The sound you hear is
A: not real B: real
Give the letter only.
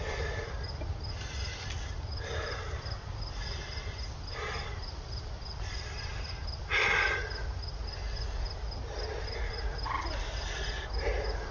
B